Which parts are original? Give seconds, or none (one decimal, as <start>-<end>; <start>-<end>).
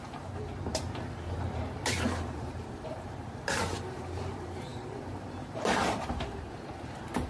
none